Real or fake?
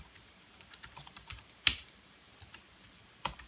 fake